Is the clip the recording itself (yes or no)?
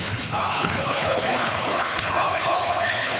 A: no